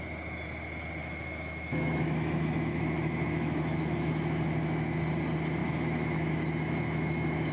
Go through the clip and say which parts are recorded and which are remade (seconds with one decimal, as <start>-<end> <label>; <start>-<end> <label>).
0.0-1.0 recorded; 1.0-5.0 remade; 5.0-5.6 recorded; 5.6-7.5 remade